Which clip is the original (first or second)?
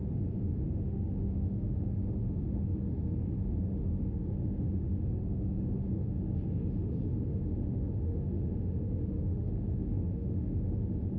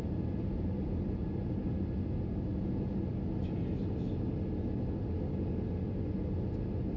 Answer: second